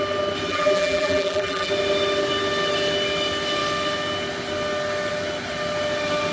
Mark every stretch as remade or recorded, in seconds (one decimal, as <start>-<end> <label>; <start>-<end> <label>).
0.0-0.5 recorded; 0.5-1.7 remade; 1.7-6.3 recorded